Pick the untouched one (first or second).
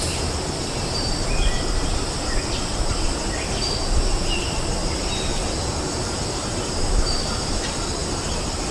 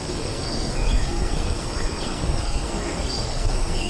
first